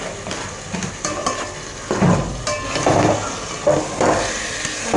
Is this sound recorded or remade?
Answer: recorded